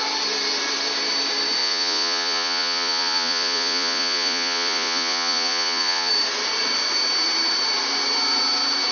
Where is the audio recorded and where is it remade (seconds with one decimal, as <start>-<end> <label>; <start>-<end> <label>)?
0.0-1.6 recorded; 1.6-6.1 remade; 6.1-8.9 recorded